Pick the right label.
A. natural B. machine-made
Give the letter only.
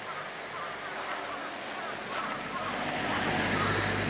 A